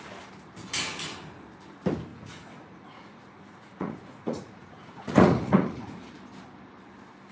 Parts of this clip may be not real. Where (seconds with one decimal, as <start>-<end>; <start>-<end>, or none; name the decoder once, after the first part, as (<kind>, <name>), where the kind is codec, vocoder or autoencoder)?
2.1-6.0 (vocoder, Vocos)